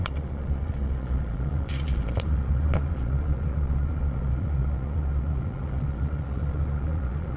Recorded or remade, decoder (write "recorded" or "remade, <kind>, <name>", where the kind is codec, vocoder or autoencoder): remade, vocoder, Vocos